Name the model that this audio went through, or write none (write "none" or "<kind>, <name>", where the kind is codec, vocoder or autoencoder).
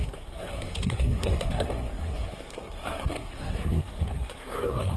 codec, SNAC